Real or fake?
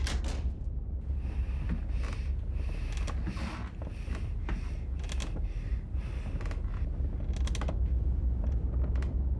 real